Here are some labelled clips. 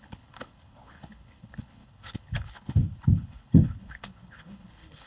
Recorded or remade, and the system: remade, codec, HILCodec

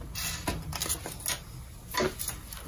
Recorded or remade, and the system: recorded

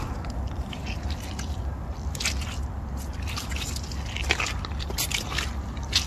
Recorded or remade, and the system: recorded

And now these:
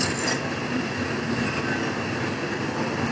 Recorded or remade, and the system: recorded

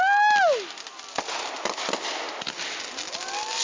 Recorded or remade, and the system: recorded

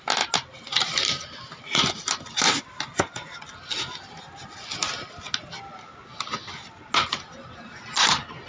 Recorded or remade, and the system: recorded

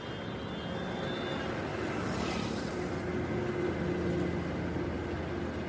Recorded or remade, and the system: recorded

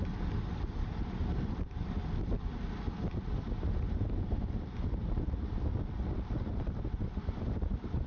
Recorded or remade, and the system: remade, vocoder, BigVGAN v2